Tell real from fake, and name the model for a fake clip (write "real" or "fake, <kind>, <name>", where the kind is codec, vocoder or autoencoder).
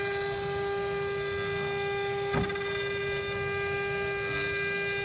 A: real